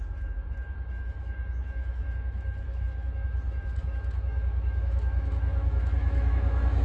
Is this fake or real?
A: fake